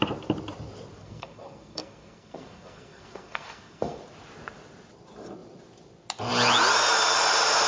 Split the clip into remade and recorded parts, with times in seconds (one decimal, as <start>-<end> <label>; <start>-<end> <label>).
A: 0.0-1.0 recorded; 1.0-4.0 remade; 4.0-7.7 recorded